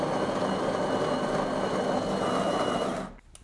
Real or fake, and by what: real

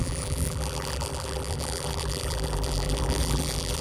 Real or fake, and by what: fake, vocoder, BigVGAN v2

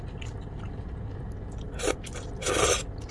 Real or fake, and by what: real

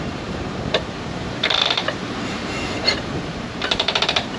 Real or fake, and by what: fake, vocoder, BigVGAN v2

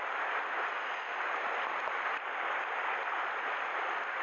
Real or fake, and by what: real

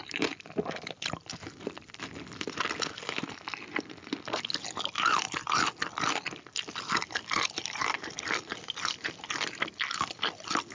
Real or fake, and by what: fake, vocoder, BigVGAN v2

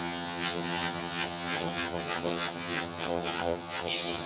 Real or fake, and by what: fake, vocoder, HiFi-GAN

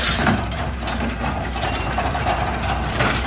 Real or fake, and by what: fake, vocoder, BigVGAN v2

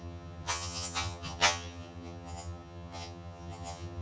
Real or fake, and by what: fake, vocoder, HiFi-GAN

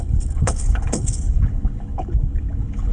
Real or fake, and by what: fake, codec, HILCodec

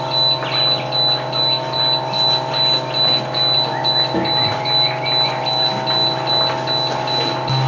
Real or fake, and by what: real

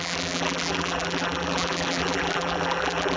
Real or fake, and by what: fake, vocoder, BigVGAN v2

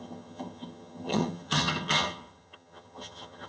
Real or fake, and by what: fake, vocoder, HiFi-GAN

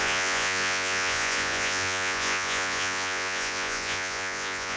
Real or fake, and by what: fake, vocoder, Vocos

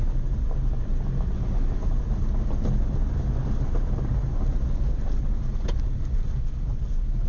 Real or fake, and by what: real